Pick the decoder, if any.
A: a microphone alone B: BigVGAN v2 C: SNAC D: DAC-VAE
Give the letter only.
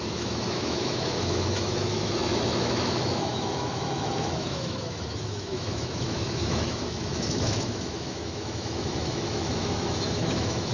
D